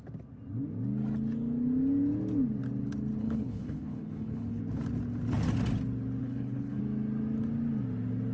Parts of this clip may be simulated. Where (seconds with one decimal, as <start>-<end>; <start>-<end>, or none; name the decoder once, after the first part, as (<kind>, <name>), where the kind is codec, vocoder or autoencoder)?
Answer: 3.2-4.6 (codec, HILCodec); 6.2-6.8